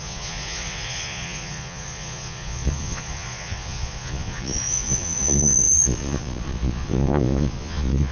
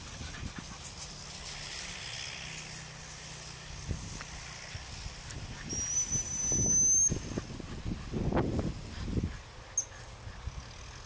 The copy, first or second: first